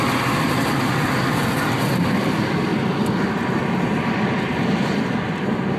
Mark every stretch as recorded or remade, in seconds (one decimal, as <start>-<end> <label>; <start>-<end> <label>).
0.0-5.8 recorded